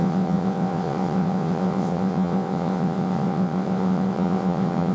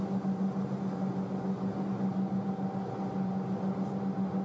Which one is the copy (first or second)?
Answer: first